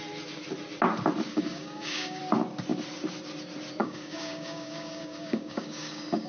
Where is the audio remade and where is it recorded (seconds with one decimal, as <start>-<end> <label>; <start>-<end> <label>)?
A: 0.0-1.3 recorded; 1.3-2.2 remade; 2.2-3.8 recorded; 3.8-6.3 remade